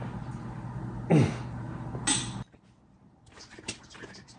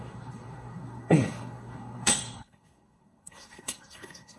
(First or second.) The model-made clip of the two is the second